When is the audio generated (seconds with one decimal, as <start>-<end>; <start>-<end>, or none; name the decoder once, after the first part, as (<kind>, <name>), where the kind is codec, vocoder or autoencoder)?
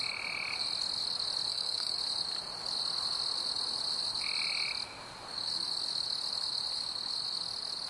1.5-2.0 (codec, SNAC)